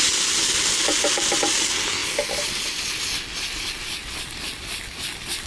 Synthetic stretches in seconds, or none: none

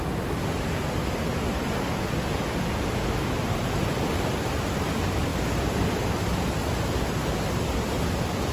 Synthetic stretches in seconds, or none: none

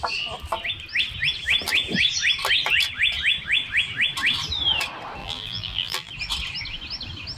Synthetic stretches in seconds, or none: 5.2-6.1 (vocoder, BigVGAN v2)

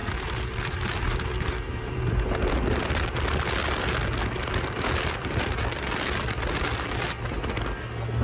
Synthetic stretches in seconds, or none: 0.0-2.3 (vocoder, BigVGAN v2)

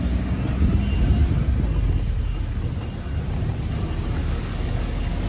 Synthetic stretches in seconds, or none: 4.2-5.3 (codec, DAC)

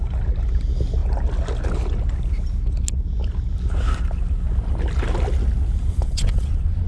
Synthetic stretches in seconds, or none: 5.9-6.9 (vocoder, Vocos)